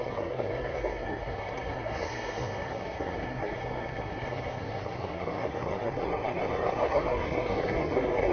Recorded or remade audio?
remade